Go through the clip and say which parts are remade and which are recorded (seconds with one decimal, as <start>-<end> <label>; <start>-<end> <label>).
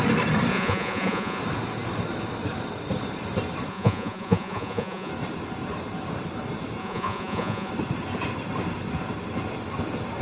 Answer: 0.0-0.5 recorded; 0.5-1.4 remade; 1.4-3.7 recorded; 3.7-5.1 remade; 5.1-6.8 recorded; 6.8-7.7 remade; 7.7-10.2 recorded